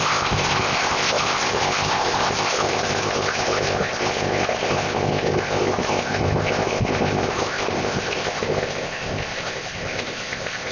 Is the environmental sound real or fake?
fake